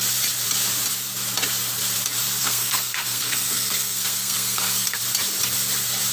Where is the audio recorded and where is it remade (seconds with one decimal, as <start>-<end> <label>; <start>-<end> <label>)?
0.0-2.4 recorded; 2.4-5.0 remade; 5.0-6.1 recorded